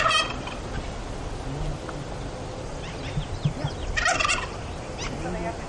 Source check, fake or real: real